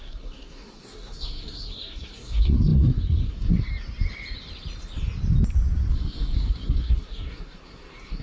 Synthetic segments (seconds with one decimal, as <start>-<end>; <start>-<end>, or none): 0.0-3.7; 5.9-8.2